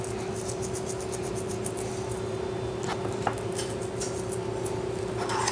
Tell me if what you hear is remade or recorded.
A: recorded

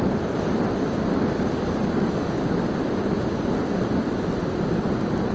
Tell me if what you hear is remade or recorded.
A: recorded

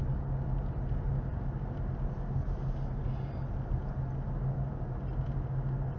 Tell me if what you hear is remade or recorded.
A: recorded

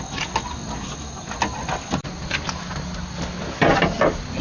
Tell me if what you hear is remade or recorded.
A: recorded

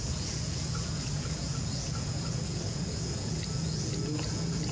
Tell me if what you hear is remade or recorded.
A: remade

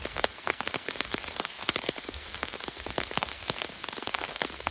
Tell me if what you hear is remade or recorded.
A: remade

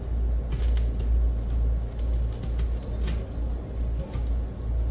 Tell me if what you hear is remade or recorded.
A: recorded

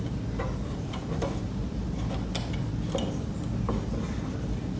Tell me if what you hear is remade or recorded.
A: recorded